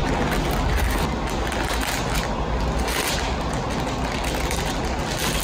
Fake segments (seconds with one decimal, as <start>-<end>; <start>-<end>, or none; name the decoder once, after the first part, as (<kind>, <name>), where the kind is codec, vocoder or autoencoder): none